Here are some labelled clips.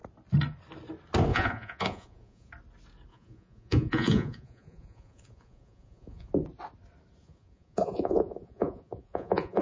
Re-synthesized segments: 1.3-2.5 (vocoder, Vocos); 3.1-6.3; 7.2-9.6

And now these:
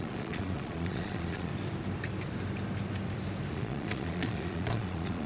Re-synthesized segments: 0.0-1.5 (vocoder, Vocos); 3.5-5.3

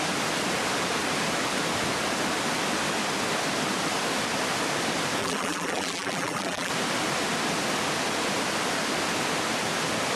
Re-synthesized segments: 5.2-6.7 (vocoder, BigVGAN v2)